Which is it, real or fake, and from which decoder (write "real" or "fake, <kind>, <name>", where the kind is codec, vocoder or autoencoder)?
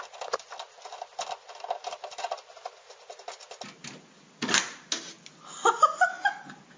real